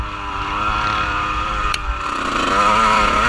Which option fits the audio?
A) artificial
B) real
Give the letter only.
A